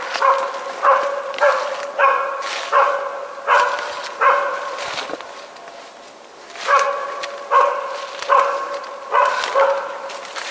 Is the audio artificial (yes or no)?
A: no